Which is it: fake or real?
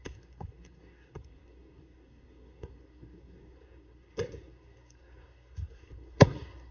fake